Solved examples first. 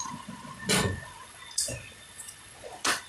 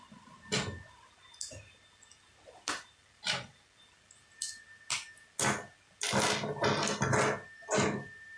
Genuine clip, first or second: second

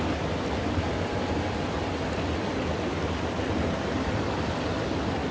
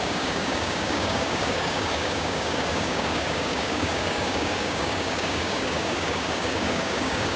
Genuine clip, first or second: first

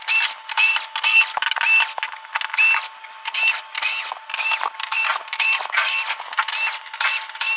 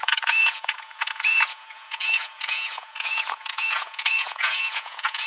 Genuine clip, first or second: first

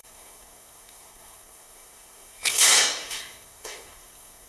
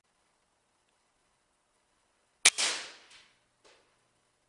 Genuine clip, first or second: second